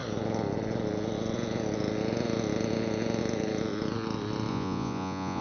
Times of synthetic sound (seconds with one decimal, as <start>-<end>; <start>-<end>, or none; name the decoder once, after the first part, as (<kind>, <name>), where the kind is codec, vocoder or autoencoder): 4.5-5.4 (vocoder, Vocos)